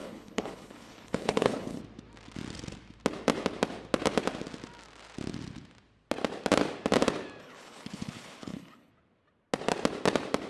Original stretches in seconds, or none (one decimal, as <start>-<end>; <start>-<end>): 1.8-7.4; 8.9-10.5